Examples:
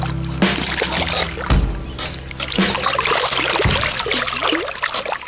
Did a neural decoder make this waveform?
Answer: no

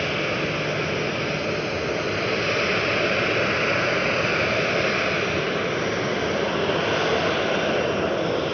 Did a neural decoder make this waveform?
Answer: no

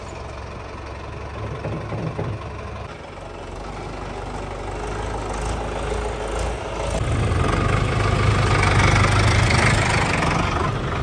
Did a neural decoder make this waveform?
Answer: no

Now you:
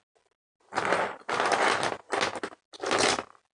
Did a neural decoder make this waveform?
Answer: no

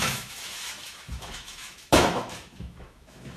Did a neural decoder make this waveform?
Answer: yes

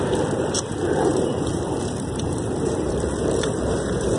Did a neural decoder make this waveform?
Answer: yes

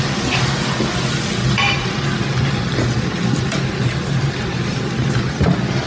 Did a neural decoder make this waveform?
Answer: no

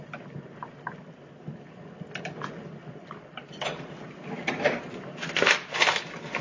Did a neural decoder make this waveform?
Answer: no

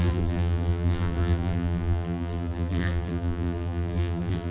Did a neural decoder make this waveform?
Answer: yes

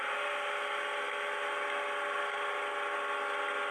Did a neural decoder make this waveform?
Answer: no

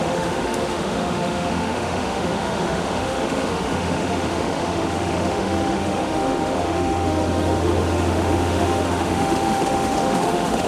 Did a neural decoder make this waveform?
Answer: yes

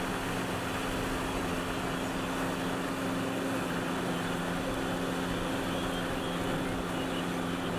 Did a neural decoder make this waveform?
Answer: no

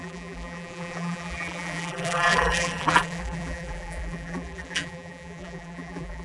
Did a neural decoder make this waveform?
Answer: yes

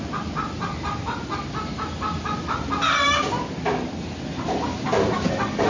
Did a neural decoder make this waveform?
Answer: no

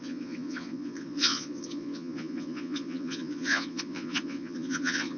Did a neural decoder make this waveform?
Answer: yes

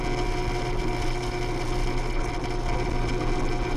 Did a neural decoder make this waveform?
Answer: no